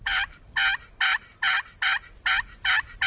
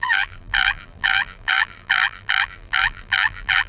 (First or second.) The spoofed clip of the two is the second